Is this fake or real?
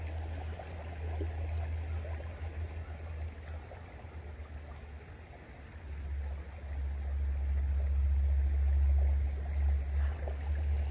real